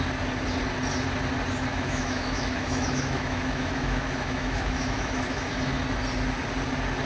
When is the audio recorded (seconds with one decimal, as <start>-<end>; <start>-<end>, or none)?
0.0-1.7; 5.6-7.1